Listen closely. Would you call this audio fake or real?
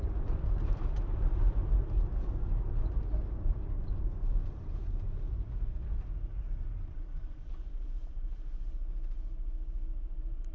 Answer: fake